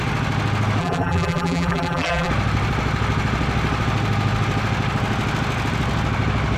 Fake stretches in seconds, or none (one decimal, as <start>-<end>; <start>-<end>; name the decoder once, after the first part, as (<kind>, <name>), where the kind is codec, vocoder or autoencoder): 0.8-2.3 (vocoder, BigVGAN v2)